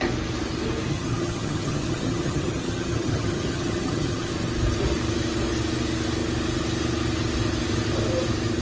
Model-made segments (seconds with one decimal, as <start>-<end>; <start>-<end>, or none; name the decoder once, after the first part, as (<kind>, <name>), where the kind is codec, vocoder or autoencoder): 0.9-4.3 (vocoder, HiFi-GAN)